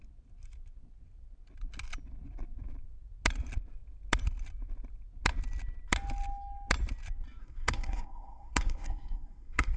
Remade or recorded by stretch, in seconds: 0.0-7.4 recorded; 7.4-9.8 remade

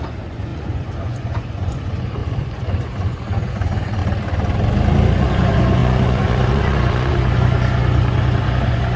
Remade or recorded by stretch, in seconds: 0.0-4.0 remade; 4.0-5.1 recorded; 5.1-9.0 remade

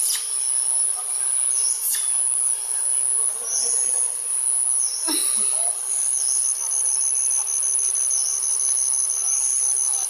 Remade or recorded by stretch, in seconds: 0.0-10.1 recorded